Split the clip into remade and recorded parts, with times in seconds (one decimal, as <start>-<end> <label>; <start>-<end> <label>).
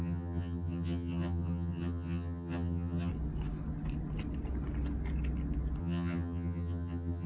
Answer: 0.0-3.1 remade; 3.1-5.8 recorded; 5.8-7.3 remade